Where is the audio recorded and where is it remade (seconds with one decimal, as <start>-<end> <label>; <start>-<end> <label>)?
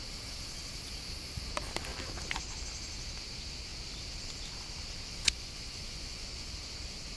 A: 0.0-5.1 recorded; 5.1-6.5 remade; 6.5-7.2 recorded